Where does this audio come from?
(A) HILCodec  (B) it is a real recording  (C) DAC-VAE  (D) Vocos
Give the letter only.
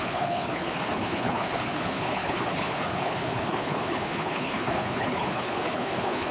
A